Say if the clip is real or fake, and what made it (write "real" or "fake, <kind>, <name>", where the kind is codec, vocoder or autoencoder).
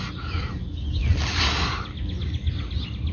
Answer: real